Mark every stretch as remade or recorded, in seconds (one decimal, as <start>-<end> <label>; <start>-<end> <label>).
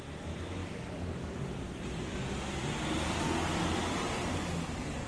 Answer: 0.0-0.6 recorded; 0.6-2.1 remade; 2.1-5.1 recorded